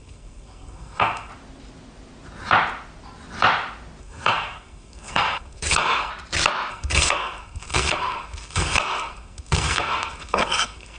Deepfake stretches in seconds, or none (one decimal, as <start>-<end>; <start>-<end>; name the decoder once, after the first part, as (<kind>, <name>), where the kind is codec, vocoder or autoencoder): 0.0-1.3 (codec, SNAC); 4.0-6.1; 6.7-11.0